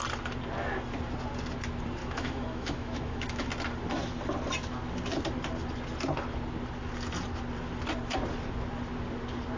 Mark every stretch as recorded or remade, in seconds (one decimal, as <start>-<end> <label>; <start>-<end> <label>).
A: 0.0-2.0 recorded; 2.0-3.5 remade; 3.5-9.6 recorded